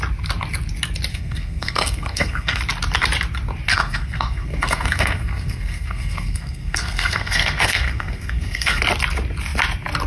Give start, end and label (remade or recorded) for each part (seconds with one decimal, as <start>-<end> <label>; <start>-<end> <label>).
0.0-1.1 recorded; 1.1-2.6 remade; 2.6-3.7 recorded; 3.7-8.8 remade; 8.8-10.1 recorded